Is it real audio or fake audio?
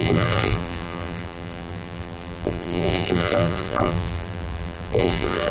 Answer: fake